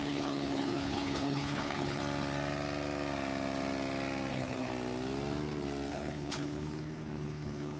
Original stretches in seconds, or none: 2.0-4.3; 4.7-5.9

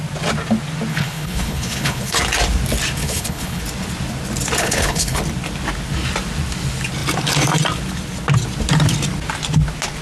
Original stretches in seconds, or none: 0.0-0.9; 2.2-3.0; 3.6-4.6; 5.2-10.0

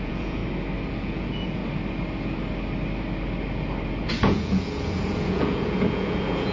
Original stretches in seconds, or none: 0.4-0.9; 1.6-4.1

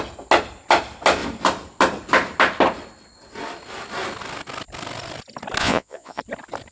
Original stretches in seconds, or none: 0.0-5.6; 6.2-6.7

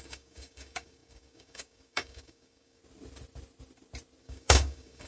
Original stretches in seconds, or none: 2.8-4.2